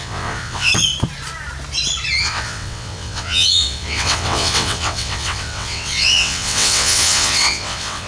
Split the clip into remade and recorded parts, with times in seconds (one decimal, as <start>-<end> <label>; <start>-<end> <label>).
0.0-0.7 remade; 0.7-2.2 recorded; 2.2-8.1 remade